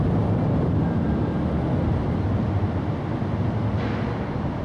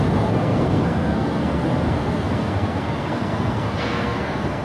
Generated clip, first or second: second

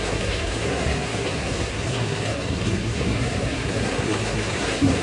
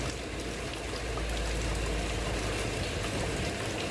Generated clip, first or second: first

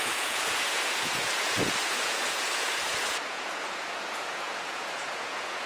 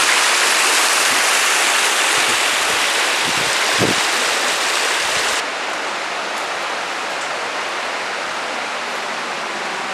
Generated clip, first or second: first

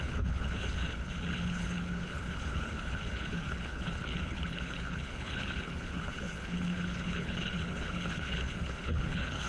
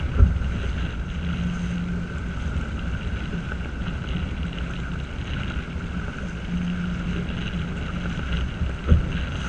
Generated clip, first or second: first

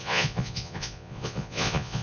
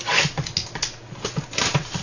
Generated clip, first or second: first